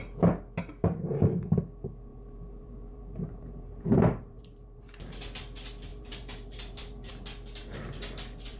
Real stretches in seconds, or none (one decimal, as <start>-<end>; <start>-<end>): 0.0-2.1; 4.8-5.9; 7.1-8.6